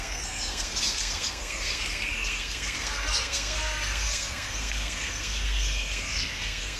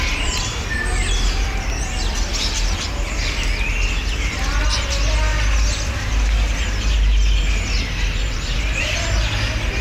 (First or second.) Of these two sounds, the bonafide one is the second